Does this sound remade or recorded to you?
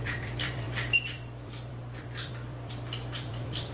remade